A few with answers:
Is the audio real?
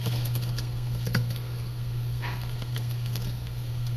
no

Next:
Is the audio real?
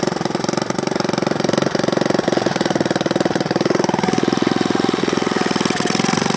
yes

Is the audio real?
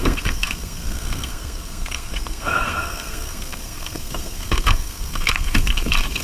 no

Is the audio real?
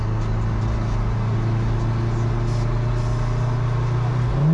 yes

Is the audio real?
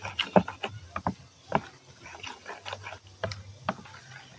yes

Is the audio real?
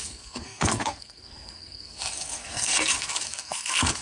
no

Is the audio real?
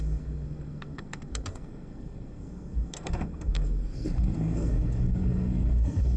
no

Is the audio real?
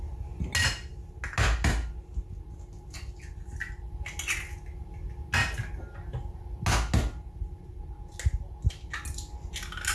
yes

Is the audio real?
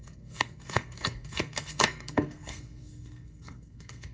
no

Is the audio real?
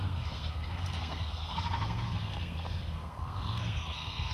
no